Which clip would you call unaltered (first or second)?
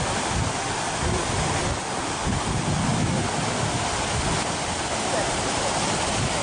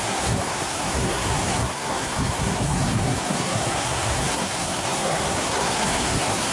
first